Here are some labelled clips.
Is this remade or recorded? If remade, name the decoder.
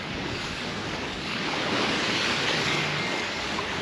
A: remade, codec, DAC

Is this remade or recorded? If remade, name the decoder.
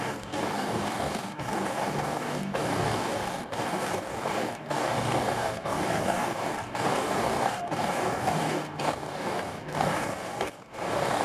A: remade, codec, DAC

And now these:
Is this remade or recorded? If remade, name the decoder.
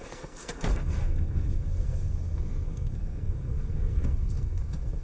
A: remade, codec, SNAC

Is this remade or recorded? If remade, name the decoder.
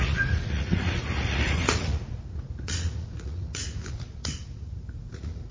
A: remade, vocoder, Vocos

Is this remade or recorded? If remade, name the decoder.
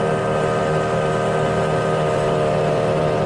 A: remade, vocoder, BigVGAN v2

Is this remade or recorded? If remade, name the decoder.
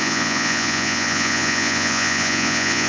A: remade, vocoder, Vocos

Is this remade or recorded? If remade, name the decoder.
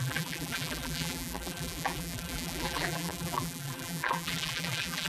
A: remade, vocoder, BigVGAN v2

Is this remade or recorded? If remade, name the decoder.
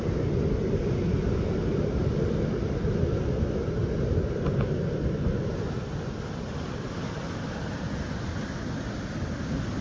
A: recorded